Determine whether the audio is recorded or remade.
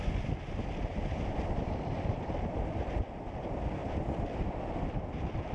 remade